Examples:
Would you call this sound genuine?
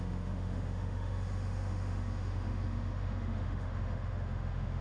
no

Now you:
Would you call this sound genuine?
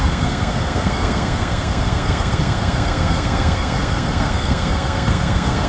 no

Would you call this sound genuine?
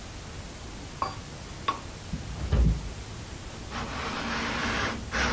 yes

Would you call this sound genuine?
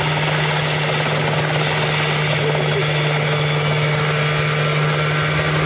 yes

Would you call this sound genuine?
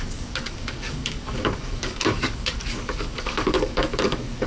no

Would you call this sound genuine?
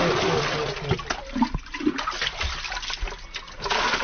yes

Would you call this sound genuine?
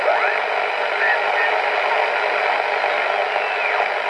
yes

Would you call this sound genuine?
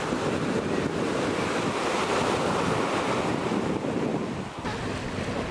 yes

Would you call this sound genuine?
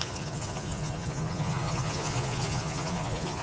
no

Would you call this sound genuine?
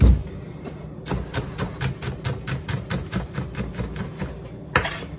yes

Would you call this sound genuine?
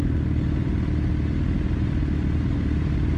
yes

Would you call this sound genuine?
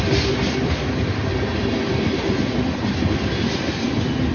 yes